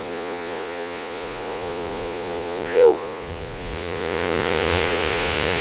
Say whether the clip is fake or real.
fake